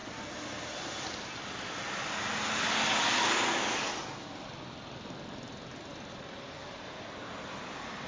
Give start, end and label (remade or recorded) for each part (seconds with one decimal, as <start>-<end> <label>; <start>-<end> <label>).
0.0-8.1 recorded